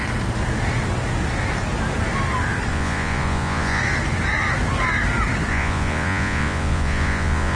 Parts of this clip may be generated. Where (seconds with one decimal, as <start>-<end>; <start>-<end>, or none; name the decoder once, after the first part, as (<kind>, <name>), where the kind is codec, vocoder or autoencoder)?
2.7-3.8 (vocoder, Vocos); 5.5-7.6